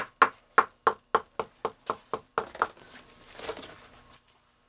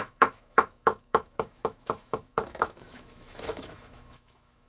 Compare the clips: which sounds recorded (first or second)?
first